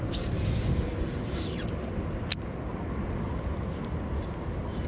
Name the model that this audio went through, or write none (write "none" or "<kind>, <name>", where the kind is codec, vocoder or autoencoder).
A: none